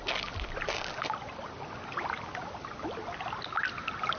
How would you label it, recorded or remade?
recorded